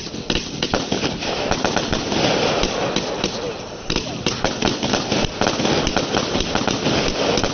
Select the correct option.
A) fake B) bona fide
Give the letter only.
B